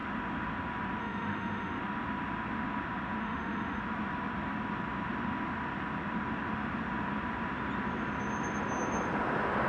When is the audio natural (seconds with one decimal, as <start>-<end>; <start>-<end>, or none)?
0.0-1.0; 1.8-3.2; 3.8-9.7